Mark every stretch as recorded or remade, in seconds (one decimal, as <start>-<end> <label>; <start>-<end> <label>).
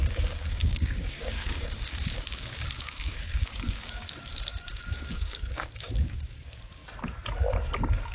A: 0.0-6.8 remade; 6.8-8.1 recorded